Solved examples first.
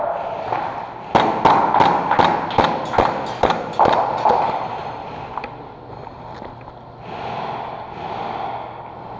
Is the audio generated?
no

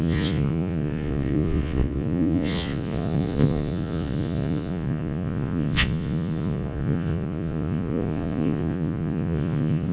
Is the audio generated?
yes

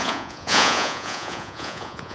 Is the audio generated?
yes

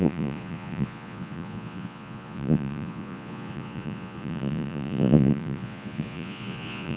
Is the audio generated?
yes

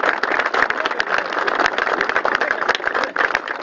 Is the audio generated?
no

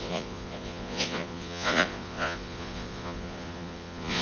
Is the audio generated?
yes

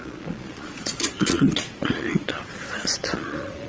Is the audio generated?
yes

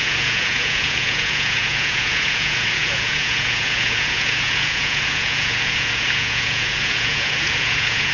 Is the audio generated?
yes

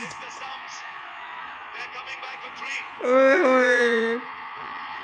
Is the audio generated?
yes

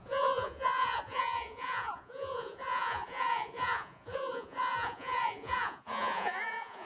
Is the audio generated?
yes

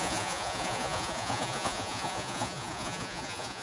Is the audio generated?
yes